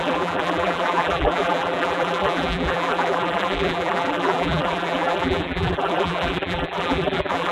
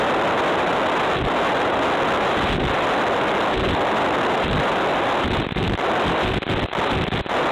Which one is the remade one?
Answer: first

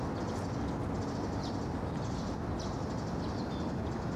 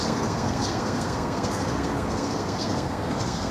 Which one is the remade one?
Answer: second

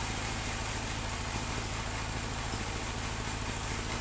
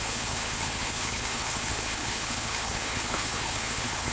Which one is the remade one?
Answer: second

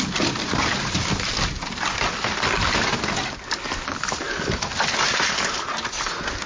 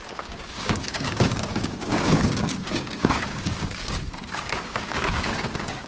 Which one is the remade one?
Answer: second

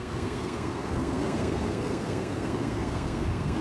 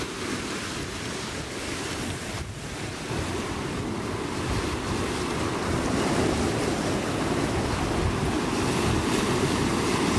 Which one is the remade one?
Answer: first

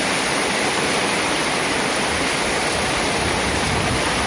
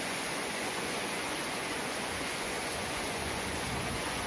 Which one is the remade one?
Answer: second